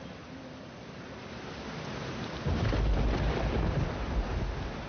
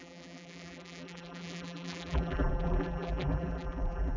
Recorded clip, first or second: first